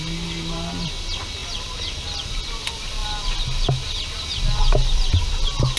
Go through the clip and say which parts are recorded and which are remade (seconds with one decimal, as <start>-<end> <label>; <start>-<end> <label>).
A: 0.0-5.8 recorded